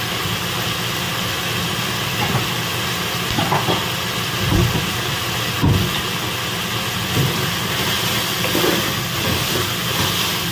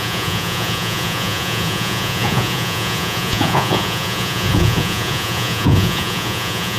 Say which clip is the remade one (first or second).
second